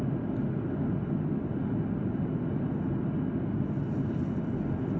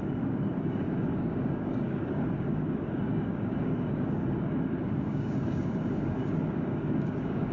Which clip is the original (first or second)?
first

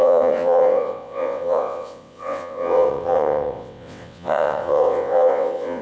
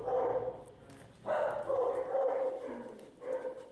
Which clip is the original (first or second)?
second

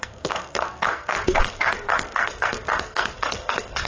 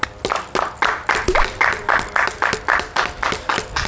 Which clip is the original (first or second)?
second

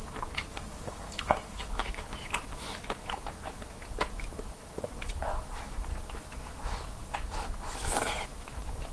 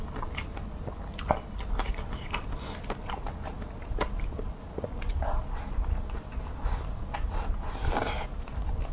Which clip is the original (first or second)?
second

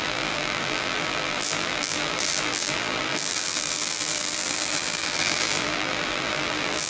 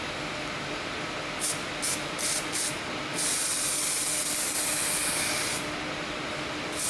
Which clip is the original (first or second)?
second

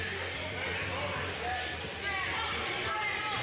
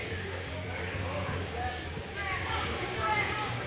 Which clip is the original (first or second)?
first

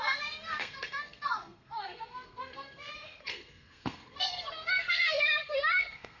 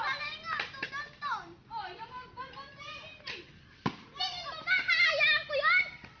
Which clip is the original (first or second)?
second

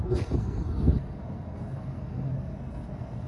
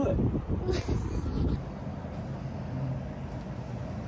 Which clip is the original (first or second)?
second